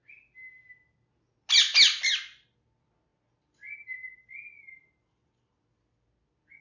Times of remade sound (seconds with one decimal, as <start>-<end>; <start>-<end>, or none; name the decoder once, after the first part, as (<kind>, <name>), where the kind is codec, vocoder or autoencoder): none